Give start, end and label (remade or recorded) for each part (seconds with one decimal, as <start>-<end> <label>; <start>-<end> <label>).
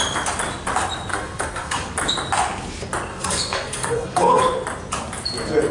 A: 0.0-1.1 recorded; 1.1-1.9 remade; 1.9-3.1 recorded; 3.1-4.4 remade; 4.4-5.7 recorded